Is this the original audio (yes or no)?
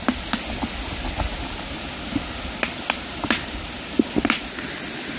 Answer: yes